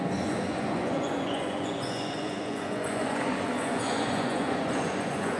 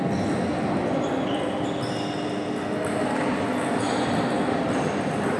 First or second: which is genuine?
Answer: second